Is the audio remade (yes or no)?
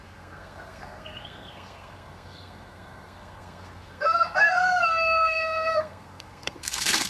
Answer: yes